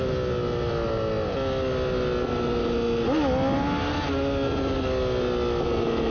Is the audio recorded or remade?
recorded